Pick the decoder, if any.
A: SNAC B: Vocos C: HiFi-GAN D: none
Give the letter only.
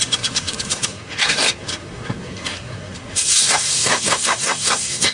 A